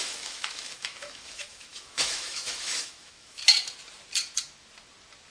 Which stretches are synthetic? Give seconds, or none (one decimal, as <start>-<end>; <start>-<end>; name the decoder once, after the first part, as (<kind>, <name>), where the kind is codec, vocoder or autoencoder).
0.0-3.4 (autoencoder, DAC-VAE)